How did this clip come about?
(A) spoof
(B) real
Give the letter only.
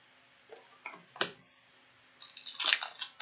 B